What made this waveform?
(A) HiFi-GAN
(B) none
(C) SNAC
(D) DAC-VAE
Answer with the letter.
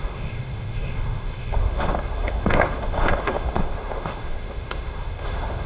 D